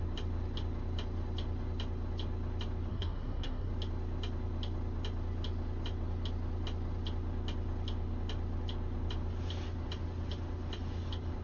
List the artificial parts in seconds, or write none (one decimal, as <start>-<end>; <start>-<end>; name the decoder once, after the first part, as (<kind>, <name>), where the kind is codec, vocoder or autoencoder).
2.9-3.7 (codec, SNAC)